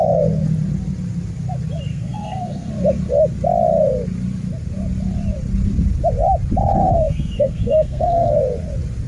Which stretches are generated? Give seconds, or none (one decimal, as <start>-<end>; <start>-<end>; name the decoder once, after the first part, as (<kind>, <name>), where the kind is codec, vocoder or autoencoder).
1.9-2.7 (codec, SNAC); 6.8-8.4